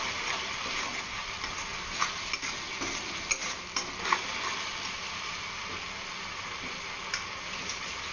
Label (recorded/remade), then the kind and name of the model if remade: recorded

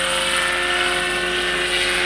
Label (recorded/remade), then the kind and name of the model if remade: recorded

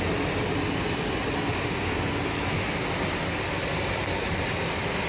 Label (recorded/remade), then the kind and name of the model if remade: recorded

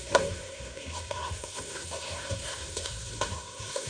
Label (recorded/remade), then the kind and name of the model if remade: remade, codec, SNAC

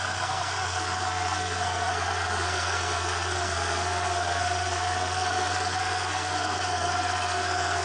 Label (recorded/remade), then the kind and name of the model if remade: remade, codec, SNAC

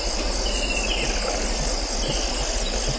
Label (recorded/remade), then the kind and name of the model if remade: recorded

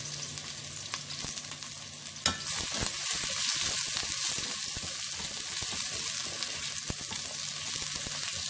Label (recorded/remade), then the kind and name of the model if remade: recorded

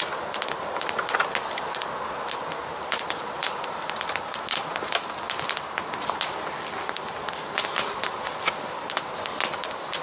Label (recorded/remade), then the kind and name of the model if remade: recorded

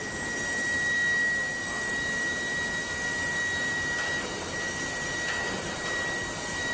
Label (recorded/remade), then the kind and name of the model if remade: recorded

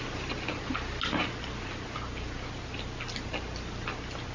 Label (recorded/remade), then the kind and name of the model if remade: recorded